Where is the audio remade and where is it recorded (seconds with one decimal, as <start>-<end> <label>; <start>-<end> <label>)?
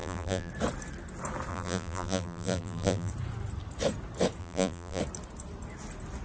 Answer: 0.0-0.5 remade; 0.5-1.5 recorded; 1.5-3.1 remade; 3.1-4.4 recorded; 4.4-5.0 remade; 5.0-6.2 recorded